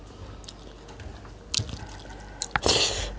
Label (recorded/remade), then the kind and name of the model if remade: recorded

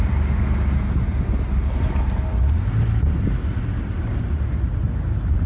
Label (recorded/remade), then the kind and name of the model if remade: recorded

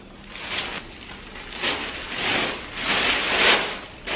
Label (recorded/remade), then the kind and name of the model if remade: recorded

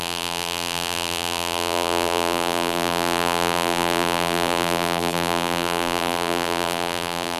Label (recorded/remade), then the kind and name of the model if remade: remade, vocoder, BigVGAN v2